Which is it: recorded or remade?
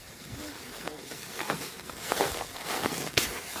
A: remade